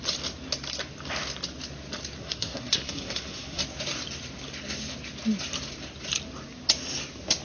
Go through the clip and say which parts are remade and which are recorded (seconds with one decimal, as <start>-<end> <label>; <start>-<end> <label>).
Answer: 0.0-2.2 recorded; 2.2-3.6 remade; 3.6-7.4 recorded